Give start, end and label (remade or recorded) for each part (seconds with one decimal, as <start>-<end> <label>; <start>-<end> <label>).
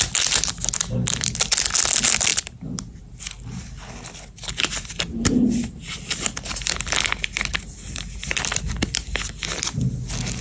0.0-10.4 recorded